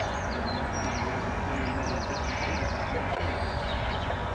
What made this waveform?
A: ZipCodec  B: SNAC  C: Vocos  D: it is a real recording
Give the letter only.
C